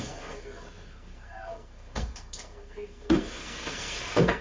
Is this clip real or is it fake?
fake